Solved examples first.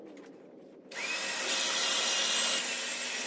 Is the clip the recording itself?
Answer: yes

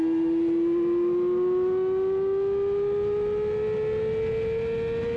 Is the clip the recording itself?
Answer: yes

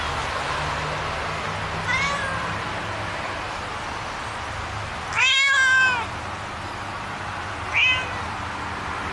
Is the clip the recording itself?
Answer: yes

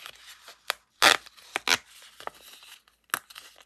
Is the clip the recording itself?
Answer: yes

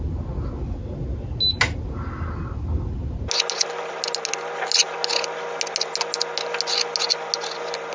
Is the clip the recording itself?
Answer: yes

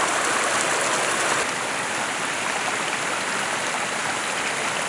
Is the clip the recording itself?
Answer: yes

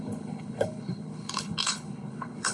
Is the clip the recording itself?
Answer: no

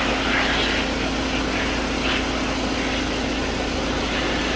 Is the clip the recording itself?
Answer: yes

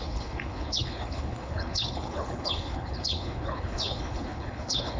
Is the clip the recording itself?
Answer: no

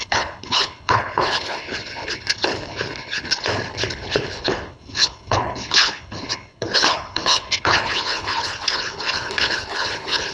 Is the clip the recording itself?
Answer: no